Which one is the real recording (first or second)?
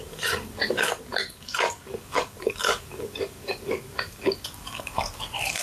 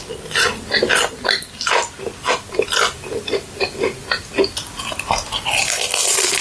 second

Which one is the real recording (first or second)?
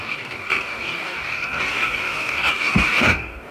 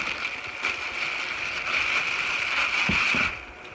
second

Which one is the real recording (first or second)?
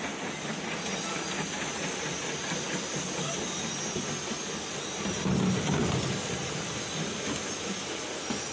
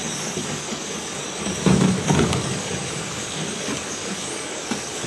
first